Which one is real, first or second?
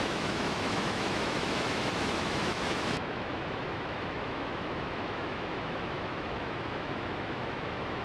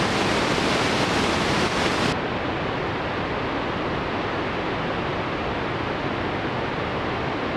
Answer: second